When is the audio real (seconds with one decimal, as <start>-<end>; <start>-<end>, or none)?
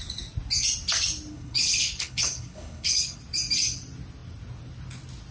0.0-1.3; 3.2-5.3